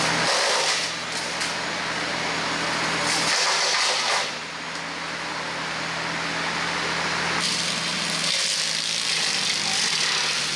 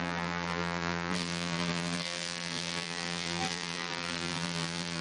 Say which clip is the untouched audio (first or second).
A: first